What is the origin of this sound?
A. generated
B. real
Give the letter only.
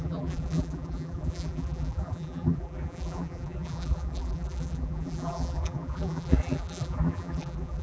A